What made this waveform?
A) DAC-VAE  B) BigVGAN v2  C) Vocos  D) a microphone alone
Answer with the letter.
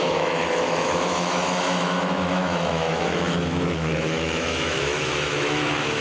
A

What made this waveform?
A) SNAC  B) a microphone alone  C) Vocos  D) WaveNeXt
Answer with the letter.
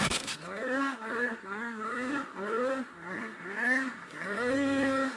A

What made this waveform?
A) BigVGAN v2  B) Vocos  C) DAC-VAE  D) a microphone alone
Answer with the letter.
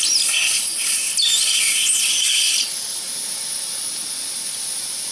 D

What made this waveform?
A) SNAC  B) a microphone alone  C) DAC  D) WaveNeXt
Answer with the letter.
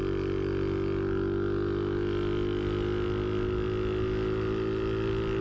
B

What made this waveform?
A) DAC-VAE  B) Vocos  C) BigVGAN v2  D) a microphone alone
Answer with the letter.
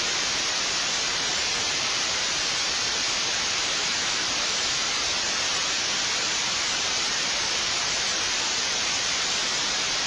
C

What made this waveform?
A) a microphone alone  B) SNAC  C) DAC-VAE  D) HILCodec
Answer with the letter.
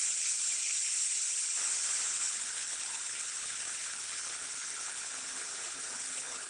D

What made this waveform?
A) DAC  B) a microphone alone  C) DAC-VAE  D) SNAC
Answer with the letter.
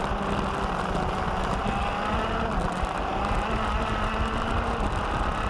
B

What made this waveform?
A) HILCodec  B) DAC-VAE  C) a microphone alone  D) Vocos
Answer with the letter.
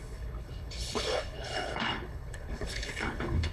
A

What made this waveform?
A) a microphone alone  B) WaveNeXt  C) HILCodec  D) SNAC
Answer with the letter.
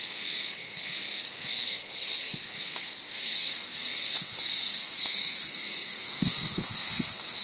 D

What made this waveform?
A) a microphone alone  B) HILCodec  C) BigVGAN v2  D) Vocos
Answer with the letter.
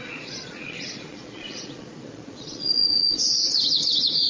D